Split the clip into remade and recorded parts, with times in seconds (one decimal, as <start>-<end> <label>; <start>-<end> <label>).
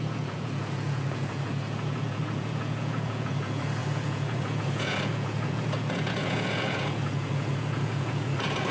0.0-8.7 remade